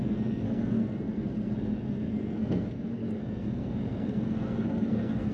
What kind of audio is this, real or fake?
fake